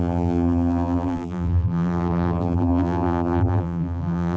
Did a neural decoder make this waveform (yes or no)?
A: yes